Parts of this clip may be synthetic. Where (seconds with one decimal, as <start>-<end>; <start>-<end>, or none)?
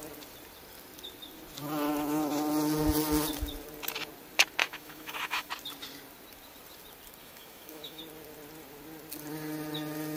4.6-5.5; 7.2-8.0